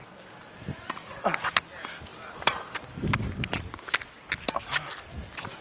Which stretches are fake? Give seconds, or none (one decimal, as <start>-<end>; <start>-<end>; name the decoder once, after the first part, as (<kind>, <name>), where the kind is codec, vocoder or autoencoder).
2.1-2.8 (vocoder, BigVGAN v2)